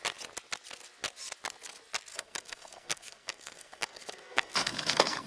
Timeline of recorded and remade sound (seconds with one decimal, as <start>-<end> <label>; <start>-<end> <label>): 0.0-2.1 recorded; 2.1-5.3 remade